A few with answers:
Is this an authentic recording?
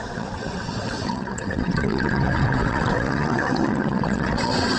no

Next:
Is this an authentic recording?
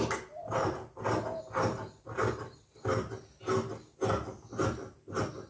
yes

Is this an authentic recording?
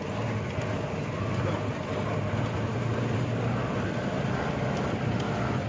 yes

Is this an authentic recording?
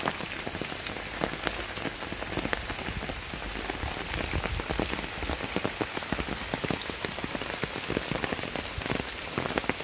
yes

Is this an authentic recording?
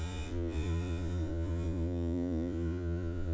no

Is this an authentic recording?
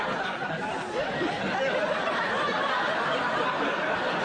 yes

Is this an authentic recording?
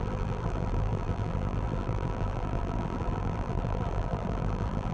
no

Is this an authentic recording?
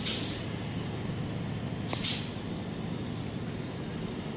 yes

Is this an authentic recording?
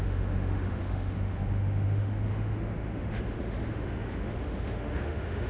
no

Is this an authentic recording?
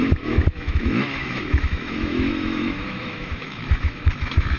no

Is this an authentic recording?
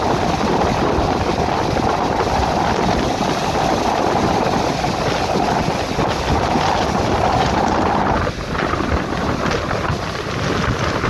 yes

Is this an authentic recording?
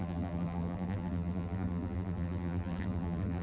no